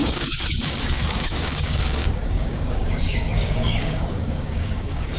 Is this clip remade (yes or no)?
yes